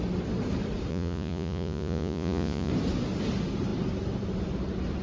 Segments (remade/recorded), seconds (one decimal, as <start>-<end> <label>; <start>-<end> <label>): 0.0-0.9 recorded; 0.9-2.7 remade; 2.7-5.0 recorded